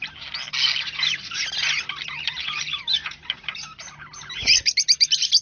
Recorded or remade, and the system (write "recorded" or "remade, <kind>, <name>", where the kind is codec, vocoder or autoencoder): recorded